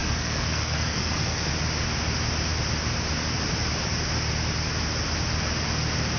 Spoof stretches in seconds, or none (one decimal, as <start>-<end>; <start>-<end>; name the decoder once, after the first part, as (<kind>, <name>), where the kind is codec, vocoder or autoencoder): 0.0-1.5 (codec, SNAC)